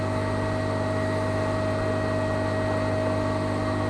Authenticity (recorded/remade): recorded